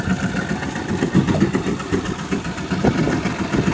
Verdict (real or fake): real